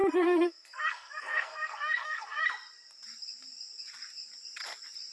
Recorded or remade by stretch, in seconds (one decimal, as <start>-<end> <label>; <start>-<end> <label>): 0.0-2.4 remade; 2.4-5.1 recorded